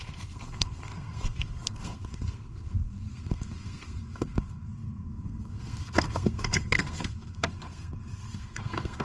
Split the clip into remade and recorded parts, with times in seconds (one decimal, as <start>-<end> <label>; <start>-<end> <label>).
0.0-9.0 remade